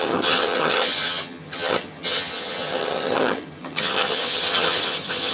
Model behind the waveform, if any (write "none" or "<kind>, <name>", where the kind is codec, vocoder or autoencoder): vocoder, HiFi-GAN